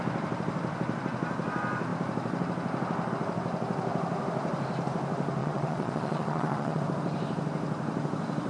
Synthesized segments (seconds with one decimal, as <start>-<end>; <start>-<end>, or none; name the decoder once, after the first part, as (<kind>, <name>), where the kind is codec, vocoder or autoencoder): 5.4-6.8 (vocoder, Vocos)

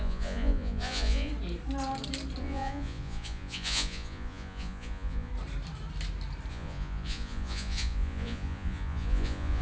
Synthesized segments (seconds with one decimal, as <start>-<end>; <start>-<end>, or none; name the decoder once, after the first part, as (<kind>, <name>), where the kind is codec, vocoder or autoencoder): 0.0-1.3 (vocoder, Vocos); 2.4-5.3; 6.5-9.6

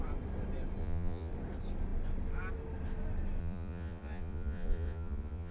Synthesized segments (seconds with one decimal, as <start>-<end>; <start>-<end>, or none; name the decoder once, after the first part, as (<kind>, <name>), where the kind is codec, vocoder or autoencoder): 0.8-1.3 (vocoder, Vocos); 3.4-5.5

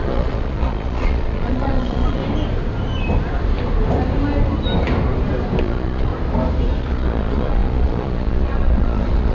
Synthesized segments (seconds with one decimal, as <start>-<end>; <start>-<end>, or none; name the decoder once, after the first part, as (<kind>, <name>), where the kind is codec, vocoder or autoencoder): 0.0-2.2 (vocoder, Vocos); 5.6-6.1; 6.8-9.3

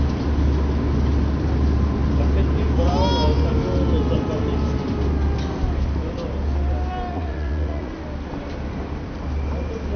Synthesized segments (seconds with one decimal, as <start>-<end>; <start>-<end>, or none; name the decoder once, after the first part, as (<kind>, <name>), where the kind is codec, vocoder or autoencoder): 7.1-7.9 (vocoder, Vocos)